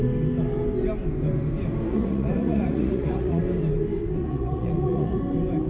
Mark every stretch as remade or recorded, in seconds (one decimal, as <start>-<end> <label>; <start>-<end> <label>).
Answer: 0.0-1.9 recorded; 1.9-3.4 remade; 3.4-4.2 recorded; 4.2-5.2 remade; 5.2-5.7 recorded